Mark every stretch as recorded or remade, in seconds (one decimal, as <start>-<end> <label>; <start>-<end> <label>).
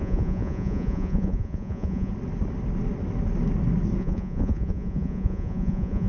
0.0-2.1 remade; 2.1-4.0 recorded; 4.0-6.1 remade